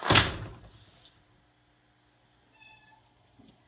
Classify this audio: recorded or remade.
recorded